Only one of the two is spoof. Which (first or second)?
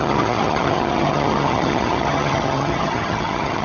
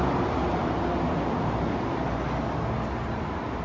first